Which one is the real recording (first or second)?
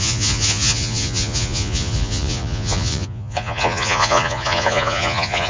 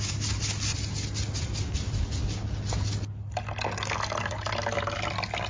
second